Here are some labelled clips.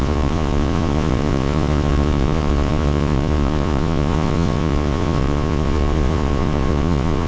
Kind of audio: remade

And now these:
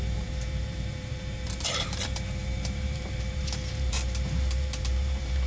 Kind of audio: remade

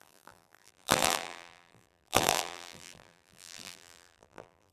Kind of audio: remade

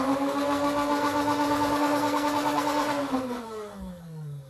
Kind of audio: remade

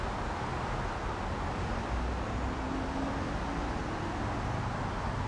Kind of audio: recorded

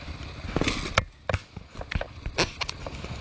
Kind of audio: recorded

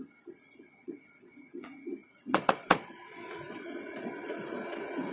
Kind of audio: remade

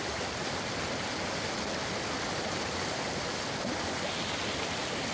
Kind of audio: recorded